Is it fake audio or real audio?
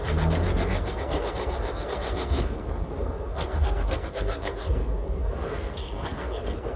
fake